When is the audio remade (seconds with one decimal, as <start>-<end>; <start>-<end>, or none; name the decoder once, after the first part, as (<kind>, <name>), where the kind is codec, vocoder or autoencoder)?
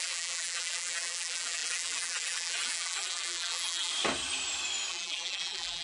0.0-3.9 (vocoder, BigVGAN v2); 4.9-5.8